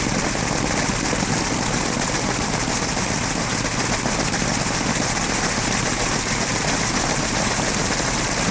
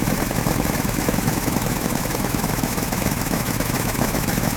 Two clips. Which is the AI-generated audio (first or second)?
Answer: second